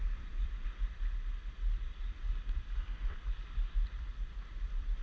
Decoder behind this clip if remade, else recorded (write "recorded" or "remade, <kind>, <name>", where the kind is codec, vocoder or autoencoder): remade, vocoder, BigVGAN v2